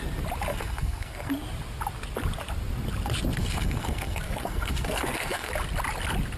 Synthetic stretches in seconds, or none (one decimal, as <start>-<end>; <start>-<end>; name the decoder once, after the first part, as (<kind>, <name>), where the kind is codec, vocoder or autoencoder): 0.5-1.3 (codec, SNAC); 3.4-5.5